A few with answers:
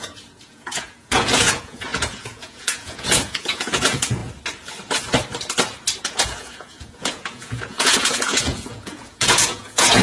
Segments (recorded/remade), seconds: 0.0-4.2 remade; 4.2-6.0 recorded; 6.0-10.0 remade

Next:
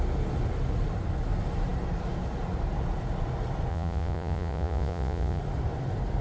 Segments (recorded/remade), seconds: 0.0-3.7 recorded; 3.7-5.4 remade; 5.4-6.2 recorded

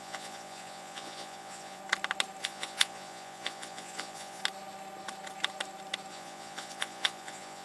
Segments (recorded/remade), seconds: 0.0-1.8 remade; 1.8-2.4 recorded; 2.4-4.4 remade; 4.4-6.1 recorded; 6.1-7.6 remade

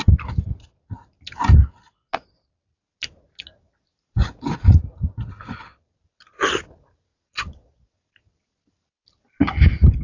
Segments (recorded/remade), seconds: 0.0-7.1 recorded; 7.1-7.9 remade; 7.9-10.0 recorded

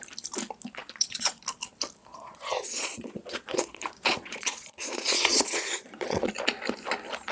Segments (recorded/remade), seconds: 0.0-0.8 recorded; 0.8-1.4 remade; 1.4-2.1 recorded; 2.1-6.3 remade; 6.3-7.3 recorded

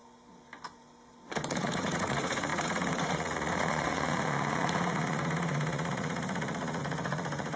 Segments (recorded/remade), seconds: 0.0-1.5 recorded; 1.5-7.6 remade